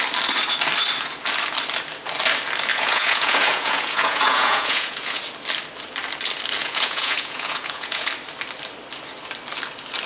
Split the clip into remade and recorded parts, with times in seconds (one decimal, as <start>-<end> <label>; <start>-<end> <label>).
0.0-2.7 recorded; 2.7-5.2 remade; 5.2-6.6 recorded; 6.6-8.1 remade; 8.1-10.1 recorded

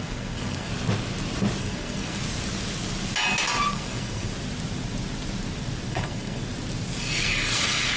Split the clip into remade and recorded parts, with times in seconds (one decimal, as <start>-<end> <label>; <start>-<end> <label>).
0.0-0.7 remade; 0.7-1.6 recorded; 1.6-2.2 remade; 2.2-3.7 recorded; 3.7-4.3 remade; 4.3-5.9 recorded; 5.9-6.4 remade; 6.4-7.0 recorded; 7.0-8.0 remade

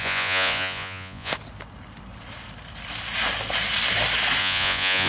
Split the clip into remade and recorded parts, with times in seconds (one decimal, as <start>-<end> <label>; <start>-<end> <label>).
0.0-1.3 remade; 1.3-4.4 recorded; 4.4-5.1 remade

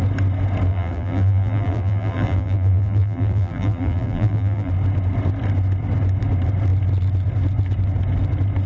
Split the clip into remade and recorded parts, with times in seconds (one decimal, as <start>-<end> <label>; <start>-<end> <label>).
0.0-0.7 recorded; 0.7-4.7 remade; 4.7-8.7 recorded

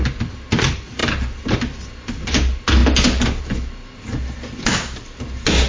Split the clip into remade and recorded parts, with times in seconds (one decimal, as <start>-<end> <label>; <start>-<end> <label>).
0.0-5.7 recorded